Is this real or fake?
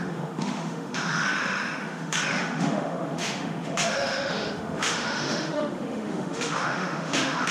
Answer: fake